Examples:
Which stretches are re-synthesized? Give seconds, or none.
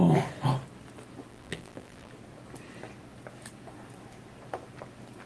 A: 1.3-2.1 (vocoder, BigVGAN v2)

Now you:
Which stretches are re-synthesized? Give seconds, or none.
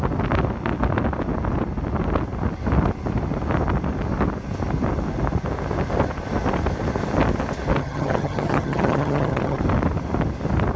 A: 7.8-9.6 (vocoder, HiFi-GAN)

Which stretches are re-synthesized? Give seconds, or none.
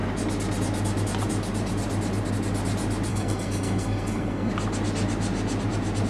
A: 3.1-4.5 (codec, SNAC)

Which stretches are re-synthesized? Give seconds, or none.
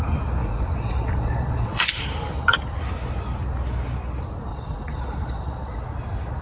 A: 0.4-2.0 (vocoder, Vocos); 4.5-5.8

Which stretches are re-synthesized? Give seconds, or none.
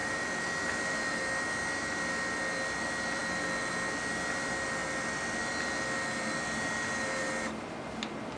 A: 0.0-2.1 (vocoder, BigVGAN v2)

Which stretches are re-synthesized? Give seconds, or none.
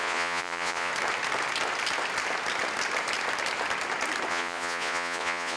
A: 0.0-0.9 (vocoder, Vocos); 4.3-5.6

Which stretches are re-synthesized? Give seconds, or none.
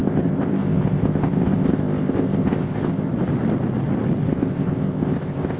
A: 0.0-3.1 (codec, ZipCodec); 4.3-5.6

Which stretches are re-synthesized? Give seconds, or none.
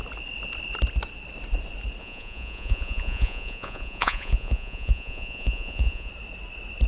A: 2.0-6.1 (vocoder, Vocos)